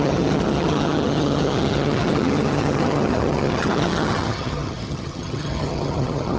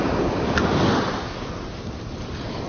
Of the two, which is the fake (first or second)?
first